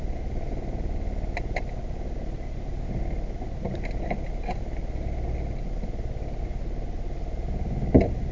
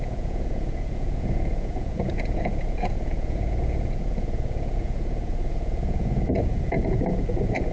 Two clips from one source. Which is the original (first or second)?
first